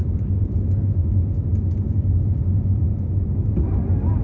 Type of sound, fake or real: real